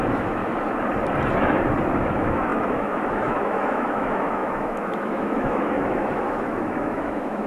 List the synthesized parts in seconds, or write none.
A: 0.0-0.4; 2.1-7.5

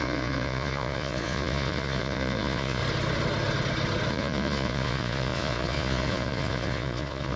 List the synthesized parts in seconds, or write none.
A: 0.0-2.8; 4.1-7.4

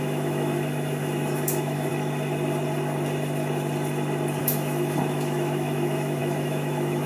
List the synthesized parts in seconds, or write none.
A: 0.0-1.9; 4.4-7.1